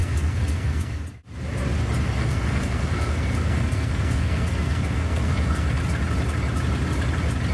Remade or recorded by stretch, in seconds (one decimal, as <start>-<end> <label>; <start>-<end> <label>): 0.0-1.0 remade; 1.0-2.2 recorded; 2.2-5.8 remade; 5.8-7.5 recorded